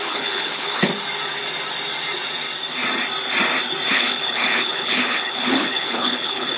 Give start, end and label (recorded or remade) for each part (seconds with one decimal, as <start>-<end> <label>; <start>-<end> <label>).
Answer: 0.0-0.9 remade; 0.9-3.9 recorded; 3.9-6.6 remade